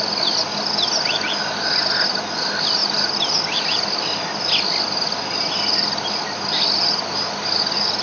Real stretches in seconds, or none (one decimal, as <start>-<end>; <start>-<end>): 0.0-8.0